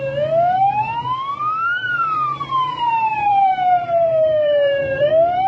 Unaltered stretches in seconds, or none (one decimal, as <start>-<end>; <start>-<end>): 0.0-1.8; 5.1-5.5